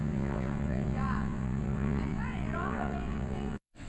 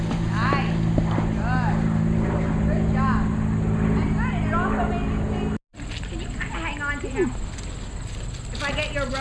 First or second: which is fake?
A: first